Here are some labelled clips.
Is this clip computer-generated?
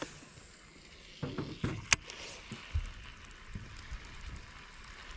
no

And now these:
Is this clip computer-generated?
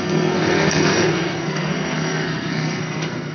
yes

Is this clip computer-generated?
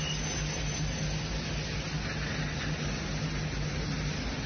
no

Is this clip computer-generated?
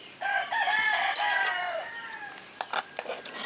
no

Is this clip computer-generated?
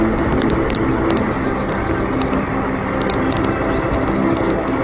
no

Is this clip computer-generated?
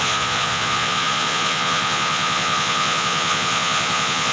yes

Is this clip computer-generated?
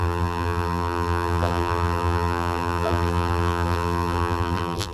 yes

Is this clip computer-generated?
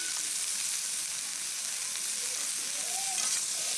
no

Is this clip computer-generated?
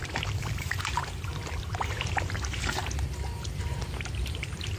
yes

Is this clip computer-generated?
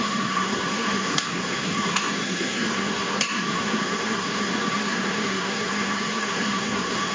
yes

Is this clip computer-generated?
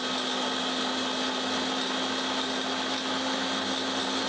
no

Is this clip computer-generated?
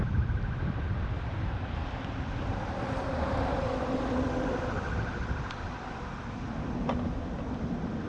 no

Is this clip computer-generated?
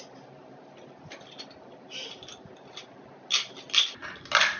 no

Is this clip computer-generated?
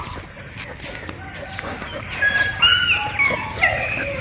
no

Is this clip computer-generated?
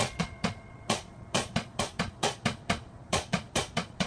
yes